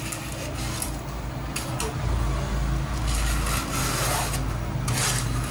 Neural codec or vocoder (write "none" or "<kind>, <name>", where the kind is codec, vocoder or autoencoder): none